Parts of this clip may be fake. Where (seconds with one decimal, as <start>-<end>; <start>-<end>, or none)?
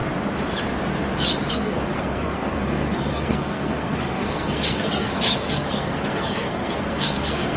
1.5-7.6